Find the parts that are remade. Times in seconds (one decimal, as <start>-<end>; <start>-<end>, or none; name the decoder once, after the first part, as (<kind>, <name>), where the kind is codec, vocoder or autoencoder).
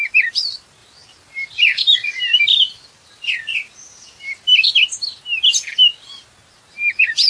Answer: 0.8-5.2 (vocoder, BigVGAN v2)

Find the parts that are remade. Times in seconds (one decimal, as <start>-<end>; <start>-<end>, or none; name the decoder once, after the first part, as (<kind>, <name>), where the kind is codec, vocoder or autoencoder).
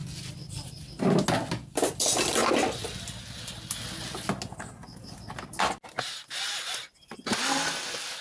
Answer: none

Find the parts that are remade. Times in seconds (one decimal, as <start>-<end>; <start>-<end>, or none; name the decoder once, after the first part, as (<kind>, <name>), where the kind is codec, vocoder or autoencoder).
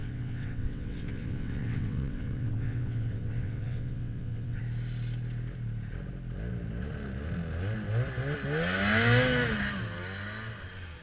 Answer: 0.0-4.6 (vocoder, WaveNeXt)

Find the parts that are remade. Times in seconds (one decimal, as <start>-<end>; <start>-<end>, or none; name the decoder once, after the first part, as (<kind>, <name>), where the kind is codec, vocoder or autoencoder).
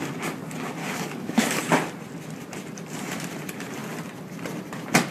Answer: 0.8-1.6 (codec, DAC)